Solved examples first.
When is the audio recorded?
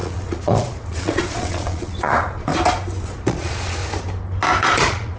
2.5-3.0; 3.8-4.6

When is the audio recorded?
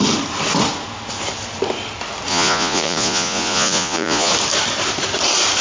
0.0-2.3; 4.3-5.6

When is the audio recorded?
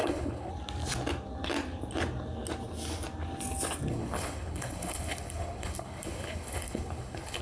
0.5-3.9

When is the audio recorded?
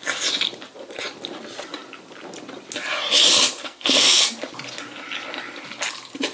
0.0-3.6; 4.3-6.3